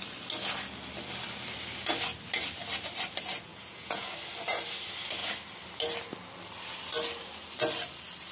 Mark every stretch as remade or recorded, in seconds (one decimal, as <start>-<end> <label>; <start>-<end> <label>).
0.0-3.5 recorded; 3.5-4.1 remade; 4.1-8.3 recorded